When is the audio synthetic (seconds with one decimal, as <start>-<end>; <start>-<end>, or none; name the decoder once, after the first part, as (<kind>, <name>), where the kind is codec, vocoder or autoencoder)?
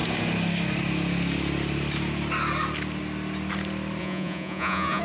4.0-5.0 (vocoder, Vocos)